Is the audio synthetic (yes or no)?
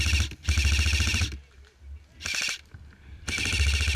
no